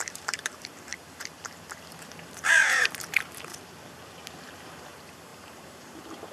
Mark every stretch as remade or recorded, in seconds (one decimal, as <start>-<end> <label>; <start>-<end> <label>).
0.0-3.5 remade; 3.5-4.7 recorded; 4.7-6.3 remade